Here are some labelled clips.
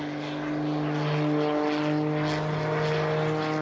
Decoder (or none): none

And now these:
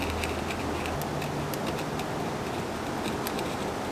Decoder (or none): none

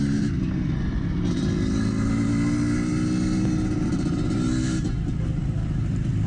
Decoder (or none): none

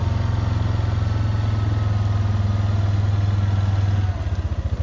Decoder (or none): none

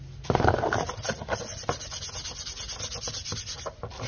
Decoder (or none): none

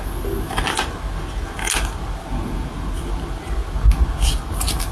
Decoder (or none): none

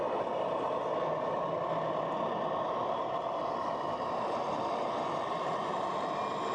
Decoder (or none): none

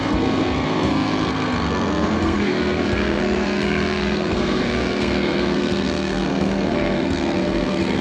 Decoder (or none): codec, SNAC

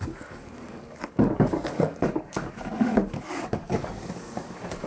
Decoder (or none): codec, DAC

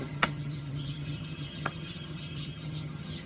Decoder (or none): vocoder, HiFi-GAN